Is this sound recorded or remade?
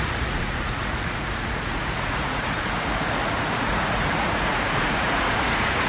remade